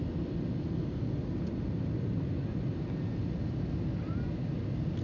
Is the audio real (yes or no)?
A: yes